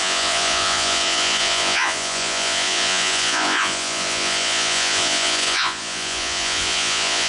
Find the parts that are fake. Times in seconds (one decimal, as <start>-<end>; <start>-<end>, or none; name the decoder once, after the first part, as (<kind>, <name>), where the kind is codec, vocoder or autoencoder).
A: 0.0-7.3 (vocoder, Vocos)